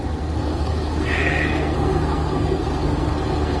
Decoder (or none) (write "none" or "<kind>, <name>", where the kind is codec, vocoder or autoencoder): codec, SNAC